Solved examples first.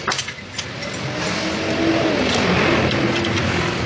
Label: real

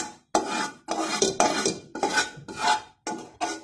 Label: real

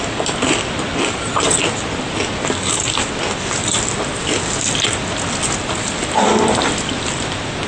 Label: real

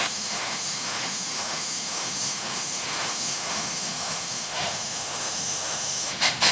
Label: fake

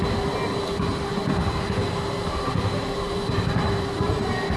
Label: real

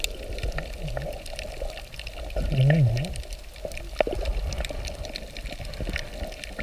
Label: real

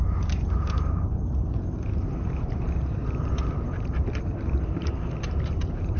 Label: fake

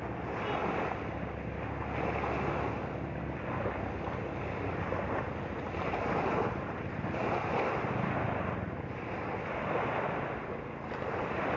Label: real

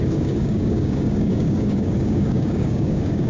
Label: fake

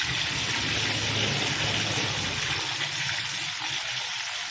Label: real